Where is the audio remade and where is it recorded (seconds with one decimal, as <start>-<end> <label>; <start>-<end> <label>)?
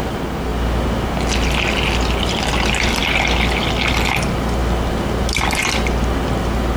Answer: 0.0-6.8 recorded